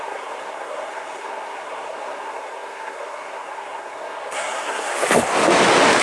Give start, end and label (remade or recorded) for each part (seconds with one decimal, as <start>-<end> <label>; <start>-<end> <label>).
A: 0.0-4.9 remade; 4.9-6.0 recorded